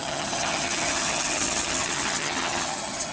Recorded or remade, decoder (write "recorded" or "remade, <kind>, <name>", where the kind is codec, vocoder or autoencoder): remade, vocoder, HiFi-GAN